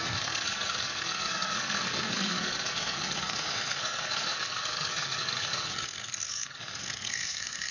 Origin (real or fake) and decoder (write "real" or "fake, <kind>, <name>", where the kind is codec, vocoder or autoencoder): fake, codec, SNAC